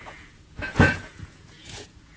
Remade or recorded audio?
remade